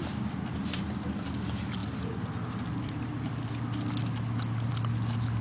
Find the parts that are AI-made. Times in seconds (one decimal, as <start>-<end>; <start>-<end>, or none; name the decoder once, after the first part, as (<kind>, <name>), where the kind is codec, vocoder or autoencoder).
none